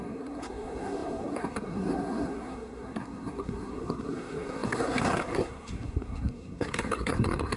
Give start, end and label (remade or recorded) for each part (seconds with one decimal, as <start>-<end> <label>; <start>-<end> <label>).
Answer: 0.0-7.6 remade

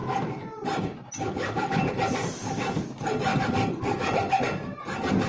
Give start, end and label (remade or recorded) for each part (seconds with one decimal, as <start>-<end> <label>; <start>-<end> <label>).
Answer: 0.0-5.3 recorded